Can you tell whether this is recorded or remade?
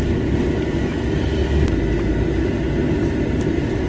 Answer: recorded